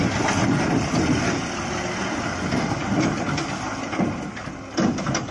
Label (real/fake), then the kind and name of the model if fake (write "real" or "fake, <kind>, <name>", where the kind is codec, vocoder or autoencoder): real